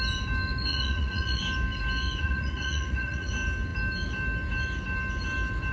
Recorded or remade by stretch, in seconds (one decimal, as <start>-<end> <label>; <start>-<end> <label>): 0.0-0.7 recorded; 0.7-1.4 remade; 1.4-2.2 recorded; 2.2-3.3 remade; 3.3-5.7 recorded